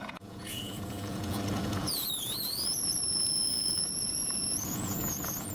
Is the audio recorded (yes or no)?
no